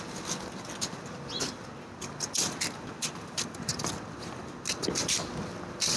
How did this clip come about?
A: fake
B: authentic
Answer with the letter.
B